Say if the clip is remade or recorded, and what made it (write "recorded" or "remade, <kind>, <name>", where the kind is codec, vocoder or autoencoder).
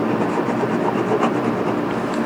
recorded